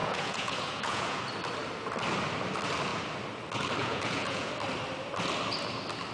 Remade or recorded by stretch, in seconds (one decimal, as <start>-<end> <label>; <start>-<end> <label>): 0.0-1.2 remade; 1.2-3.8 recorded; 3.8-4.5 remade; 4.5-6.1 recorded